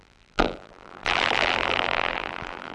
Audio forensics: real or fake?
fake